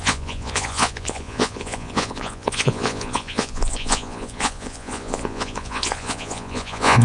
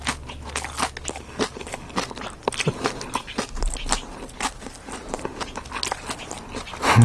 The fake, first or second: first